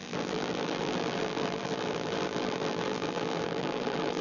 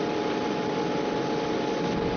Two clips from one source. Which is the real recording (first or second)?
second